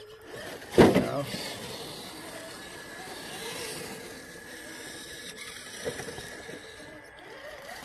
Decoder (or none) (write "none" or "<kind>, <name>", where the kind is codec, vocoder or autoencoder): none